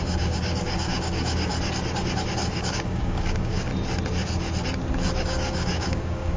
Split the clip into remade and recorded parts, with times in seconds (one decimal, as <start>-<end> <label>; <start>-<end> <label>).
0.0-1.5 remade; 1.5-2.5 recorded; 2.5-3.7 remade; 3.7-5.2 recorded; 5.2-6.4 remade